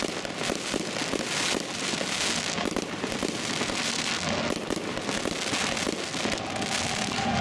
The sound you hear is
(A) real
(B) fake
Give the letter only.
A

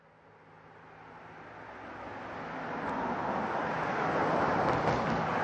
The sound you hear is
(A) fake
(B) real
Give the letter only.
B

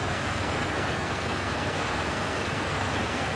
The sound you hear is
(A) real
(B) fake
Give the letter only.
B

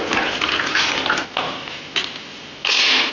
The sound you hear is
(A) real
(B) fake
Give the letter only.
A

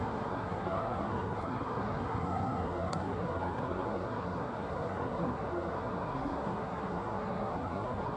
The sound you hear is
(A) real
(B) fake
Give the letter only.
B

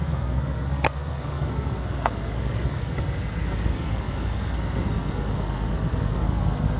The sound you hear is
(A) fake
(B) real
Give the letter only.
A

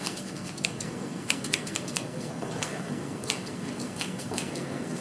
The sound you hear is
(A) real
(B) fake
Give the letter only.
B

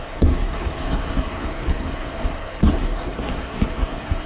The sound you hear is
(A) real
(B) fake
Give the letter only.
B